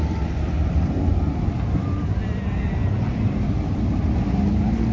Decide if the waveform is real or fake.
real